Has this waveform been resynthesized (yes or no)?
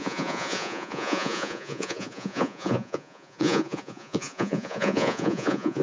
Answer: yes